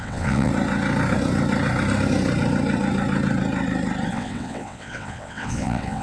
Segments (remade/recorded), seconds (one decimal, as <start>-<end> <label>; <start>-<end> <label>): 0.0-0.5 remade; 0.5-4.1 recorded; 4.1-6.0 remade